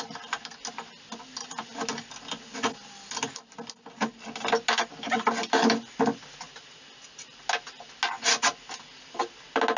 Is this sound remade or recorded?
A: recorded